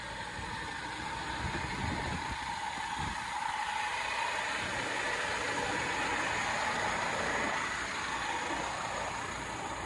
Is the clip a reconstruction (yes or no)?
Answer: no